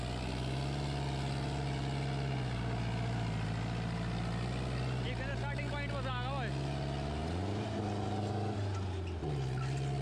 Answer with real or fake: real